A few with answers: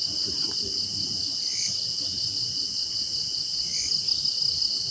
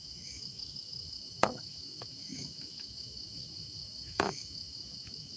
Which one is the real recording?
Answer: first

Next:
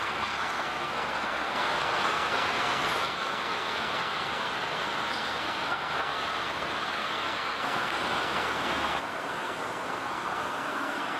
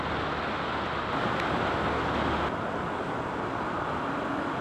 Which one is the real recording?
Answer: second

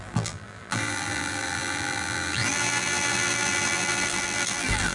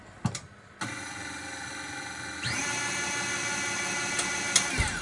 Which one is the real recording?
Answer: second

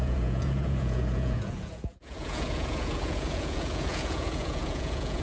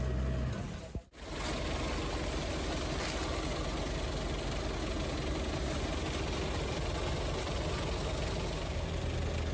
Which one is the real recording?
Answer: second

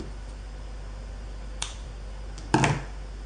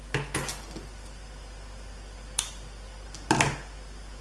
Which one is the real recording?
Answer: second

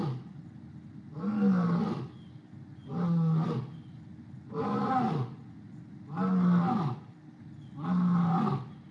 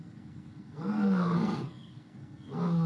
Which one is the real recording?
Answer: first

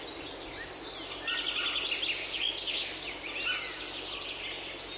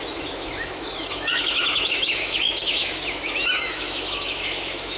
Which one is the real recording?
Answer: first